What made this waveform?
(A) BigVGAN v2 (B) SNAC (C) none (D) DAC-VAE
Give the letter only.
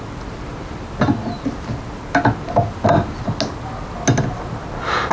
C